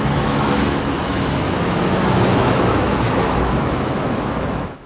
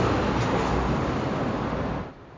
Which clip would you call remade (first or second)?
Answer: first